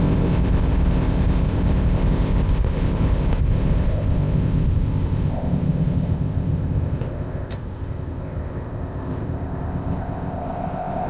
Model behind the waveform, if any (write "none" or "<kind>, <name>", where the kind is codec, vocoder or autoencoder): codec, ZipCodec